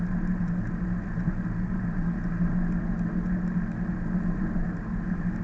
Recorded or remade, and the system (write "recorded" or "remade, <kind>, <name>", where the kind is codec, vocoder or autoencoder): recorded